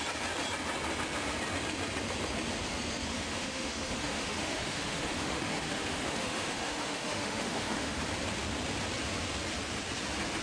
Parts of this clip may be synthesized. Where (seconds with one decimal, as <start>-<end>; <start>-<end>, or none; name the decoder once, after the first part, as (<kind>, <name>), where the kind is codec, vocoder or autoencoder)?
3.1-8.0 (autoencoder, DAC-VAE)